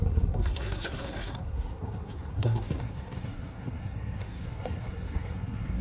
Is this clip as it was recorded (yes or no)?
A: no